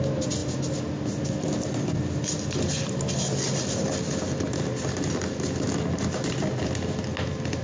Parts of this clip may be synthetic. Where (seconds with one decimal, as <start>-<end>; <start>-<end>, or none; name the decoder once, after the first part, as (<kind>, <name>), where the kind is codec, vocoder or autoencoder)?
none

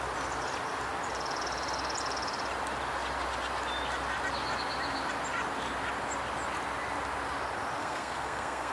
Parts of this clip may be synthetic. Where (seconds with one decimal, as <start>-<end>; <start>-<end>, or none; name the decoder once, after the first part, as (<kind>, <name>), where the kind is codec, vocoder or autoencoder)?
7.8-8.7 (codec, SNAC)

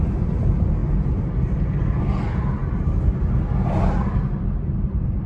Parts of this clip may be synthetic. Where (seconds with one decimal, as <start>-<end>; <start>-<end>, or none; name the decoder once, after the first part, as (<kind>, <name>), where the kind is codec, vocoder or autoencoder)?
none

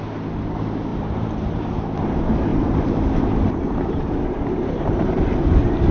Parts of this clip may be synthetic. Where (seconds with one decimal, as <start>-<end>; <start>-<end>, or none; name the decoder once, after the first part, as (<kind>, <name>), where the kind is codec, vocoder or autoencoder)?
0.9-1.7 (vocoder, BigVGAN v2); 2.5-5.5

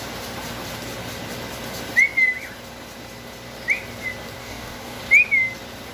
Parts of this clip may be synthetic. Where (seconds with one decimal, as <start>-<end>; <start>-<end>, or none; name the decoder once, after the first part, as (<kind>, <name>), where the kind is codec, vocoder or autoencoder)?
4.4-5.0 (codec, DAC)

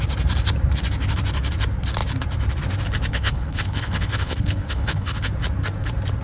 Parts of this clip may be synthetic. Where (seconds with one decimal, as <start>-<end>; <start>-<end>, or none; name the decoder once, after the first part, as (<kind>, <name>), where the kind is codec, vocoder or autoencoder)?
3.1-5.3 (codec, HILCodec)

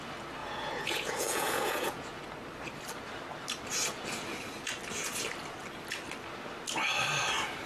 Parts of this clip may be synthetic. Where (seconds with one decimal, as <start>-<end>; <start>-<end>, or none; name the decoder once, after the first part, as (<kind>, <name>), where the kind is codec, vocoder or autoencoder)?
0.4-2.2 (vocoder, Vocos)